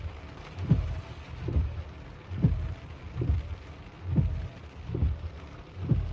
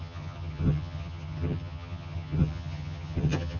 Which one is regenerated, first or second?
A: second